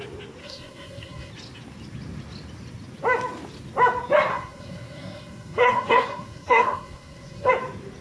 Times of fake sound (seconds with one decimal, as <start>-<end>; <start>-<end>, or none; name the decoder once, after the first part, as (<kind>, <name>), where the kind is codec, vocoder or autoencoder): 0.4-1.3 (codec, SNAC); 4.3-7.5